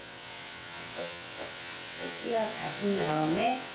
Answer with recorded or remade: remade